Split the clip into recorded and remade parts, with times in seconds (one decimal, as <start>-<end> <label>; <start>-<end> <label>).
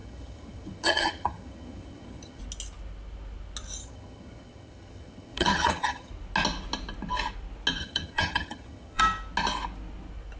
0.0-2.4 remade; 2.4-3.8 recorded; 3.8-6.1 remade; 6.1-7.8 recorded; 7.8-9.0 remade; 9.0-10.4 recorded